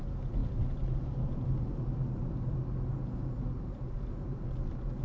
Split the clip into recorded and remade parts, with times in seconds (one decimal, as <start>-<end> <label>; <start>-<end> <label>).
0.0-5.0 recorded